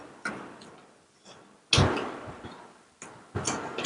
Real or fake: real